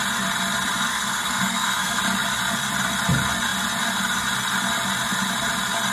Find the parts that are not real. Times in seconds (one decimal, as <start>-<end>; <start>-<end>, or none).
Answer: 0.9-2.0